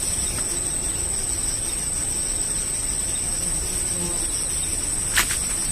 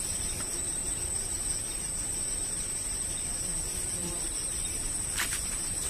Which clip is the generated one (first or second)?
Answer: second